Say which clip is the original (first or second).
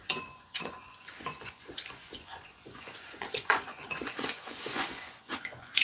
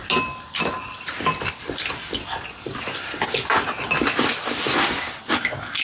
second